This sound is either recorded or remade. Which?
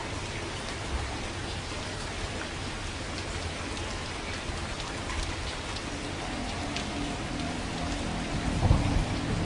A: recorded